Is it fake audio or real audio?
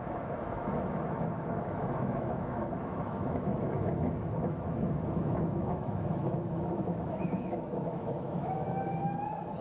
fake